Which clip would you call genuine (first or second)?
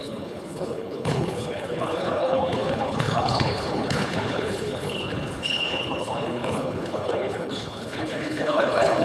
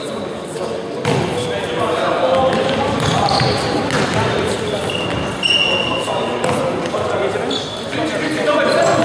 second